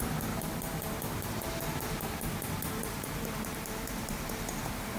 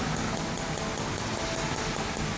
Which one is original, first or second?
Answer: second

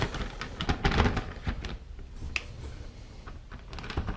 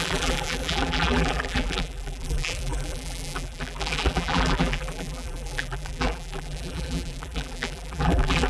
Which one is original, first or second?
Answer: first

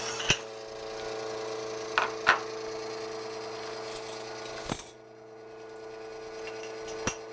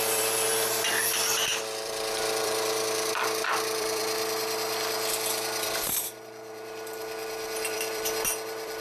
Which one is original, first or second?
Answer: first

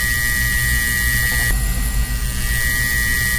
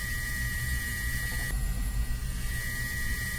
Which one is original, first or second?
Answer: first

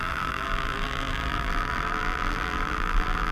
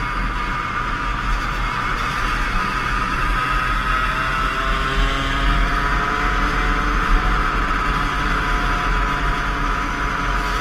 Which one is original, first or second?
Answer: second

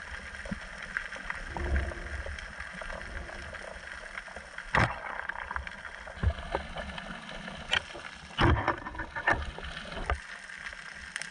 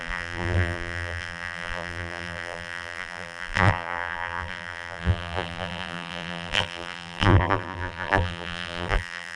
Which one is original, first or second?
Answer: first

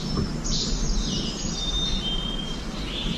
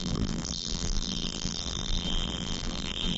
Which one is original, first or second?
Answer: first